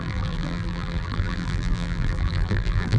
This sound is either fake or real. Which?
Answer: fake